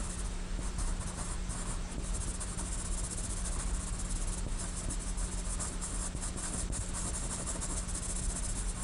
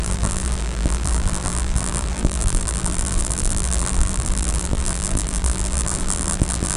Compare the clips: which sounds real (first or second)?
first